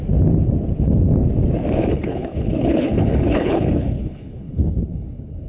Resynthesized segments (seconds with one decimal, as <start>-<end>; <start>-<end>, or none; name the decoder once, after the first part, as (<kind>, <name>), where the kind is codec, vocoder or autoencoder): 1.9-5.5 (codec, HILCodec)